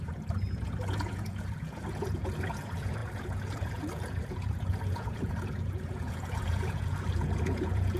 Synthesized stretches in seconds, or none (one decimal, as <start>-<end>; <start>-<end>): 0.0-8.0